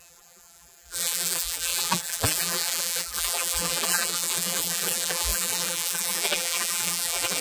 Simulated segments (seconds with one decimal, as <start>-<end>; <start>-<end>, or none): 0.0-7.4